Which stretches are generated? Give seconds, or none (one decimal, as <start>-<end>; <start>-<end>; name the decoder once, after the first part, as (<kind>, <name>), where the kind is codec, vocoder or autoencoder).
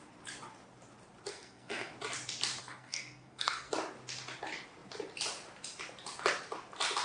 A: 1.3-1.9 (codec, SNAC); 2.6-3.7